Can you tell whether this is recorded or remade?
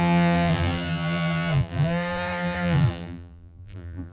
remade